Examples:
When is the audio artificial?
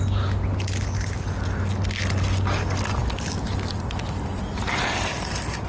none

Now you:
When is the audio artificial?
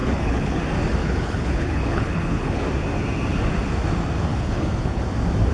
0.0-0.6 (codec, HILCodec); 1.0-2.6; 4.3-5.0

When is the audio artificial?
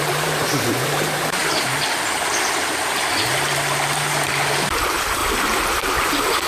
0.0-1.4 (vocoder, BigVGAN v2); 4.7-5.2; 5.8-6.5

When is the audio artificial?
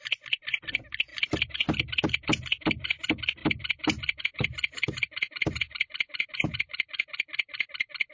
0.0-1.1 (vocoder, BigVGAN v2); 2.1-8.1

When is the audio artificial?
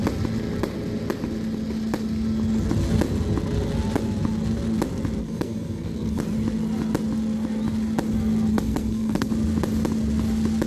5.2-6.2 (codec, SNAC); 8.5-9.3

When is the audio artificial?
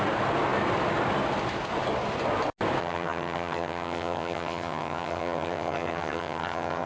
2.8-6.9 (vocoder, HiFi-GAN)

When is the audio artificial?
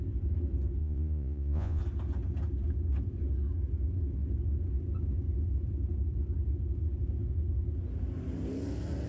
0.8-1.8 (vocoder, Vocos)